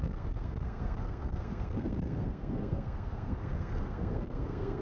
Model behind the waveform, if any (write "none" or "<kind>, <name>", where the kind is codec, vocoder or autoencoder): codec, SNAC